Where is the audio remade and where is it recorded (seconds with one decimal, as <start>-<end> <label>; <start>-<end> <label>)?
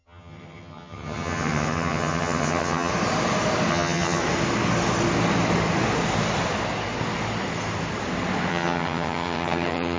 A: 0.0-2.9 remade; 2.9-3.7 recorded; 3.7-4.2 remade; 4.2-8.5 recorded; 8.5-10.0 remade